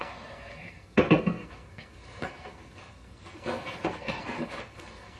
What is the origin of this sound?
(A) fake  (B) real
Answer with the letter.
A